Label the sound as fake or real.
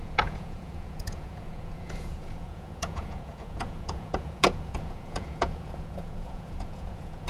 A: fake